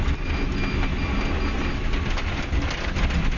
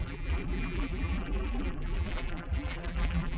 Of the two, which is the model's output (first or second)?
second